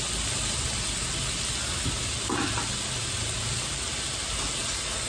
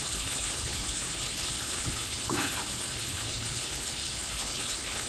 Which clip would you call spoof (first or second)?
second